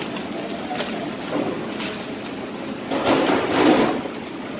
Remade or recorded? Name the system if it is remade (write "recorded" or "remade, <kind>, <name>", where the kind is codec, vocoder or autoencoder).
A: recorded